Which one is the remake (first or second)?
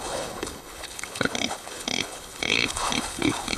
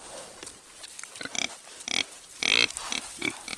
first